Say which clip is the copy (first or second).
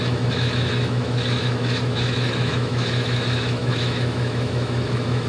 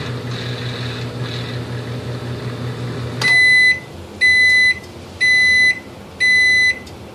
first